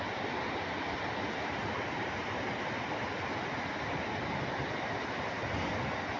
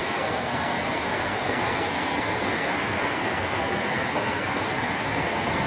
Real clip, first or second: first